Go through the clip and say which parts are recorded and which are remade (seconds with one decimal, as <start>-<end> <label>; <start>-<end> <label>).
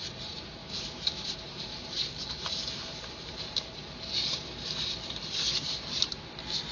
0.0-0.6 recorded; 0.6-1.3 remade; 1.3-6.7 recorded